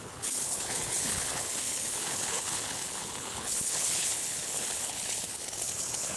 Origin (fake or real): fake